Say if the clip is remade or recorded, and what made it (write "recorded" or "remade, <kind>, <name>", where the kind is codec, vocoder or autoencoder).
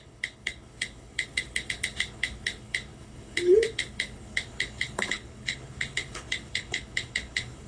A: remade, codec, HILCodec